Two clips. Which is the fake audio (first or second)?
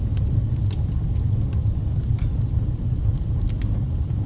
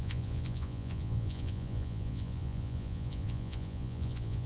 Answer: second